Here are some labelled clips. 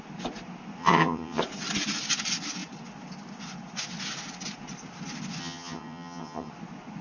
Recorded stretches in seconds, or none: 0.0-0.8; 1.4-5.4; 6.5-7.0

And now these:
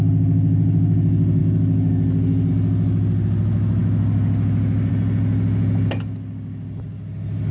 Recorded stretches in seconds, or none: 0.0-7.5

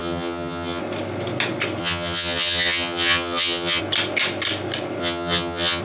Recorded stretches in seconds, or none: 0.8-1.8; 3.8-5.0

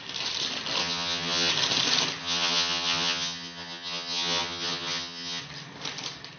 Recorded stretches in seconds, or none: 0.0-0.8; 1.5-2.2; 5.4-6.4

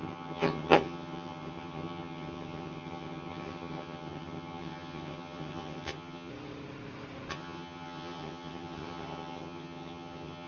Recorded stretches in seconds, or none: 6.3-7.3

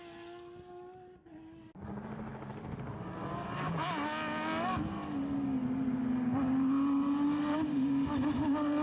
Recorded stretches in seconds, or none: 0.0-8.8

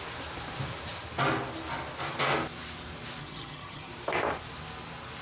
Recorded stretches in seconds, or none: 0.0-3.2; 3.9-5.2

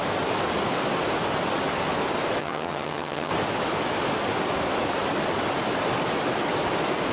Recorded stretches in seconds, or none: 0.0-2.4; 3.3-7.1